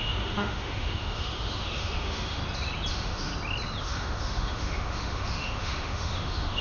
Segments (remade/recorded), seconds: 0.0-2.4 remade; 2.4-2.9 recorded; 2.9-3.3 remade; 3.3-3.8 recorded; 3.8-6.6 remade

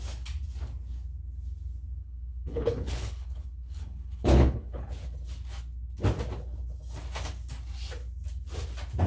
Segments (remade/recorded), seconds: 0.0-2.0 recorded; 2.0-4.9 remade; 4.9-9.1 recorded

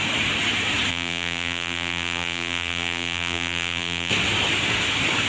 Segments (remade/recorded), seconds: 0.0-0.9 recorded; 0.9-4.1 remade; 4.1-5.3 recorded

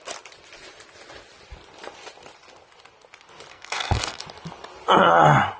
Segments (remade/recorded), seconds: 0.0-3.5 recorded; 3.5-4.2 remade; 4.2-5.6 recorded